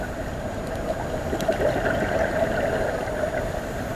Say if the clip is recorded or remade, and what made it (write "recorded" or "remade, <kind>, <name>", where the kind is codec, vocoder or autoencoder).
recorded